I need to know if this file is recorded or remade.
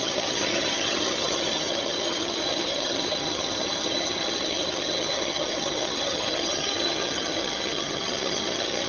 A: remade